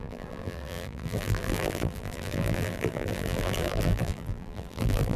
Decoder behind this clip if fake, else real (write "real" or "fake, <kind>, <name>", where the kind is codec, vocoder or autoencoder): fake, vocoder, BigVGAN v2